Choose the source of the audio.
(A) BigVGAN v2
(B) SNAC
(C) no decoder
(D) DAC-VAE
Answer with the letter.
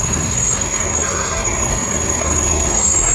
B